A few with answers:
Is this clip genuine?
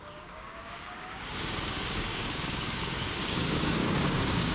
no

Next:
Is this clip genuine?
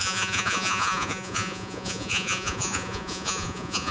no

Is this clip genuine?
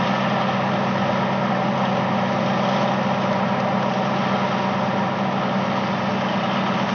yes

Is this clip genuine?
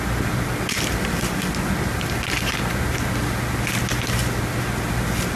yes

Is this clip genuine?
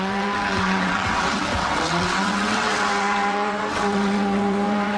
no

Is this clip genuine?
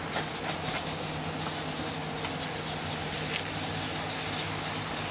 yes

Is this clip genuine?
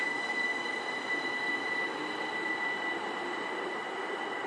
yes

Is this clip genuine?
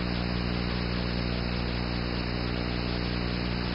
yes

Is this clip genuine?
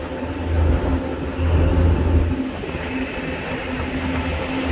yes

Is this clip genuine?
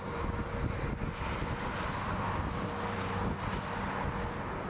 yes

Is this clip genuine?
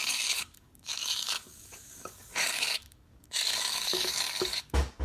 no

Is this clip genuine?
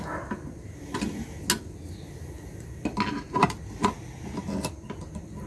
yes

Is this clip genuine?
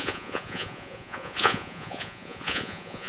no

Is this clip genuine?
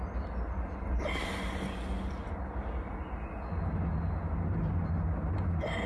yes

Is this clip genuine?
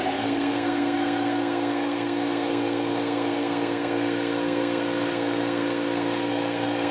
no